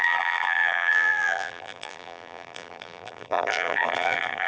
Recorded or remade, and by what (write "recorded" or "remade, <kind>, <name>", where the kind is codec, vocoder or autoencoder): remade, vocoder, BigVGAN v2